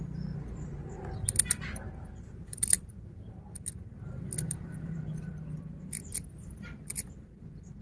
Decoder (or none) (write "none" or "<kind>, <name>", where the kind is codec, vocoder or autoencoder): vocoder, BigVGAN v2